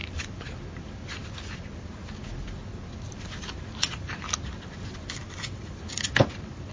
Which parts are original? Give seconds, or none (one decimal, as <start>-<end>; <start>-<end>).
0.0-6.7